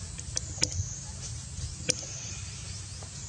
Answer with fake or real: real